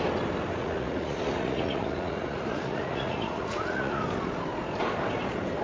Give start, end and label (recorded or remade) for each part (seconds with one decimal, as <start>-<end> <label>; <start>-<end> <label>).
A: 0.0-0.6 recorded; 0.6-4.0 remade; 4.0-5.6 recorded